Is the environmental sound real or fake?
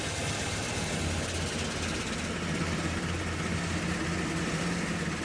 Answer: real